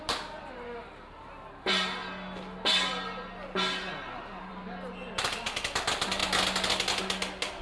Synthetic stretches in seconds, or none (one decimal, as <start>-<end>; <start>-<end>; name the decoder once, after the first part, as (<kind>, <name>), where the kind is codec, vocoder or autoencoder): none